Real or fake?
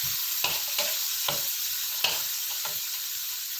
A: real